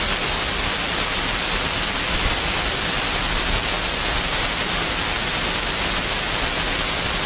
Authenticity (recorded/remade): recorded